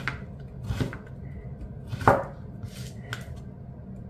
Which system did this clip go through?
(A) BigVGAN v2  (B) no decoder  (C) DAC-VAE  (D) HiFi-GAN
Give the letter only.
B